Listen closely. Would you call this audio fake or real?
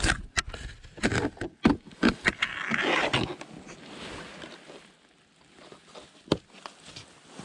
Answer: real